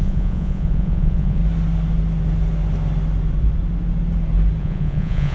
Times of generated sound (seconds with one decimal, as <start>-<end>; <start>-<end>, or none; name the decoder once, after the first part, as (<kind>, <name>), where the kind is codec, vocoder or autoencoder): 0.0-1.4 (vocoder, Vocos); 4.6-5.3